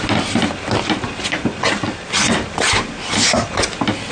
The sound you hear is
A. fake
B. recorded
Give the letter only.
B